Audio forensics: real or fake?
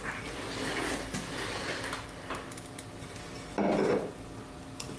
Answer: real